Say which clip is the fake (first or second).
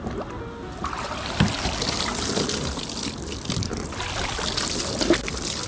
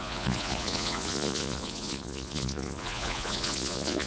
second